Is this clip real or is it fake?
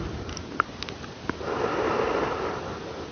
real